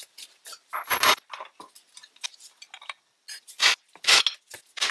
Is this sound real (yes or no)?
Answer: yes